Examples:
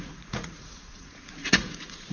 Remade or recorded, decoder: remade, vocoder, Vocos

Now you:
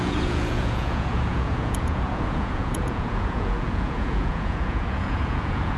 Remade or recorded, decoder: remade, vocoder, Vocos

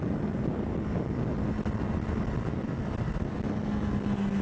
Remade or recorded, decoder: recorded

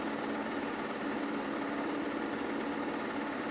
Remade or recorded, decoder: recorded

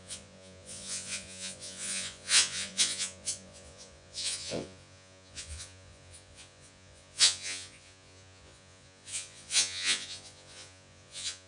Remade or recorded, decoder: remade, vocoder, Vocos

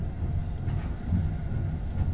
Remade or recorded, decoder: recorded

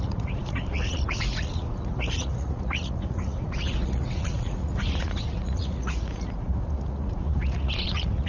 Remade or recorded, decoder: remade, vocoder, Vocos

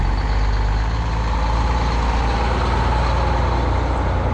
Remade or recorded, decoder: recorded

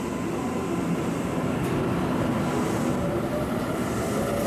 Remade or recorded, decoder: recorded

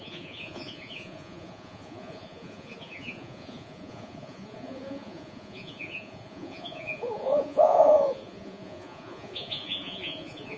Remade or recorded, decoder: remade, vocoder, Vocos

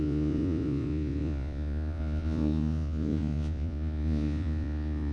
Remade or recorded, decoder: remade, vocoder, Vocos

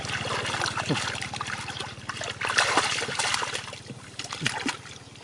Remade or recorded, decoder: recorded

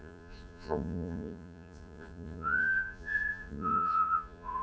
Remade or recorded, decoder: remade, vocoder, Vocos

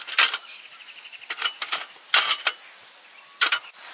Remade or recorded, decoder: recorded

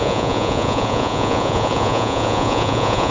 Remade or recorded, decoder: remade, vocoder, Vocos